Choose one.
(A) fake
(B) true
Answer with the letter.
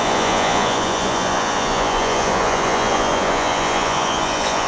A